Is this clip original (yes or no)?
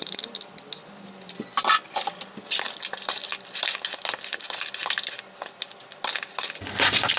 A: yes